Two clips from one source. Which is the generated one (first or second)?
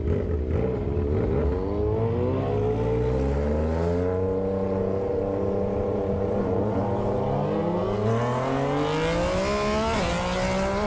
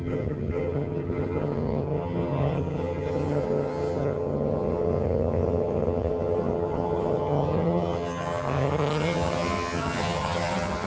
second